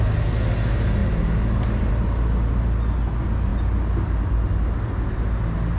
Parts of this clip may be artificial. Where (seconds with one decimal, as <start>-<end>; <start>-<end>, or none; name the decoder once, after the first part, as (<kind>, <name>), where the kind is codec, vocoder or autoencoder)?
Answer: none